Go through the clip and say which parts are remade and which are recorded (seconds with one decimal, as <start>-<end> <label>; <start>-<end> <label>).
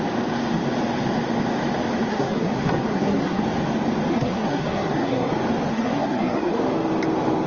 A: 0.0-2.1 recorded; 2.1-3.4 remade; 3.4-4.1 recorded; 4.1-5.3 remade; 5.3-5.7 recorded; 5.7-6.6 remade; 6.6-7.5 recorded